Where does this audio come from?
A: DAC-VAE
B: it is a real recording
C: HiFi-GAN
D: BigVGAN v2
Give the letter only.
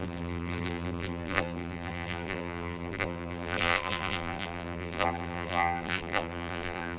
D